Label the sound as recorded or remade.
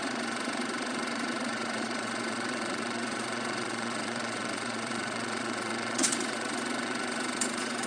remade